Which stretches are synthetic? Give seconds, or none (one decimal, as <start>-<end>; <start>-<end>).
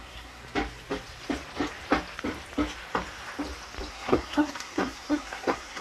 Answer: 0.0-0.4; 3.9-5.8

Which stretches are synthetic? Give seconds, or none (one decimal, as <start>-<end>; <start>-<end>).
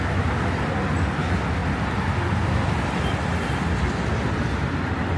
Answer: none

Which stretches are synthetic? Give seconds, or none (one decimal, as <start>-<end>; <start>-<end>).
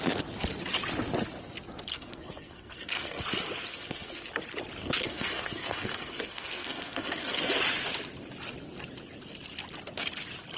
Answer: 1.9-3.2; 3.7-4.3; 4.8-7.6